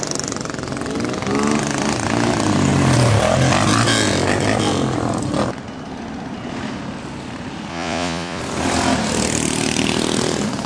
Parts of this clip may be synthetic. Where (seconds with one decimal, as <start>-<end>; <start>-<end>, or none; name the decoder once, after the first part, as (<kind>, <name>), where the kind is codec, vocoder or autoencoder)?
7.7-8.4 (vocoder, Vocos)

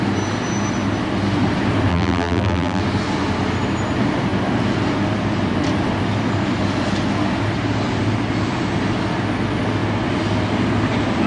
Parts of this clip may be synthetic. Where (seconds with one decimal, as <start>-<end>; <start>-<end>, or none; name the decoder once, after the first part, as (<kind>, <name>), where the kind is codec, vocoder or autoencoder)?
1.9-2.8 (vocoder, BigVGAN v2)

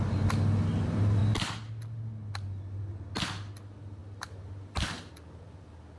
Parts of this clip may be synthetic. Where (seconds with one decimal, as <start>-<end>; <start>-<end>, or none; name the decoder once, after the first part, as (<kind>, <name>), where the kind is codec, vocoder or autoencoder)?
none